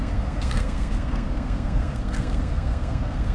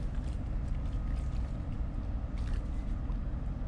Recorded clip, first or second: second